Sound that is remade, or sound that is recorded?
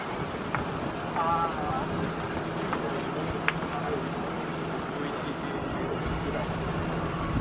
recorded